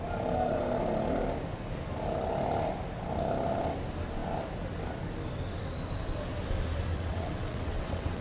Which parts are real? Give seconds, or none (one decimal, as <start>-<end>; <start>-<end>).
0.0-6.9